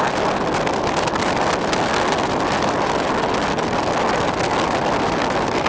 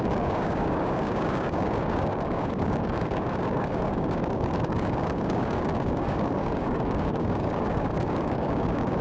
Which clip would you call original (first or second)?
first